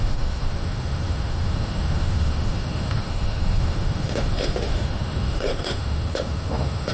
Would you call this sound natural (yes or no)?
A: no